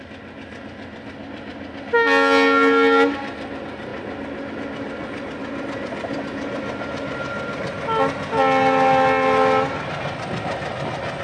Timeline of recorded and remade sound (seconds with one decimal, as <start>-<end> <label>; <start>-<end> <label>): 0.0-11.2 recorded